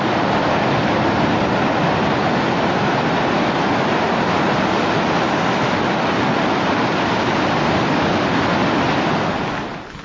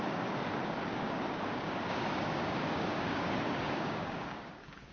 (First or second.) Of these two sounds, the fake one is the second